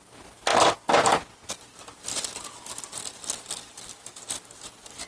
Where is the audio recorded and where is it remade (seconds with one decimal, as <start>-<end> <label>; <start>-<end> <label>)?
0.0-5.1 recorded